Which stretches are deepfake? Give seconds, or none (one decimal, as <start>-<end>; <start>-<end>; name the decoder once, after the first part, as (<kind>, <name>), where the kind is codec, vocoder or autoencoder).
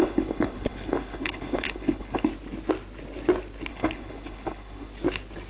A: 0.0-2.3 (codec, HILCodec); 3.7-4.9